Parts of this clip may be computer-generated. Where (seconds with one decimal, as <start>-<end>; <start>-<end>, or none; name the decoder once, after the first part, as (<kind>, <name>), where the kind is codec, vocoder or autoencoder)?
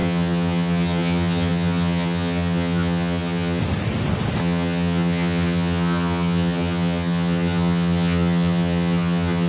0.0-3.6 (vocoder, HiFi-GAN); 4.4-9.5